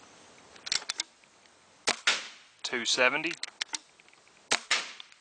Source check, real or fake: real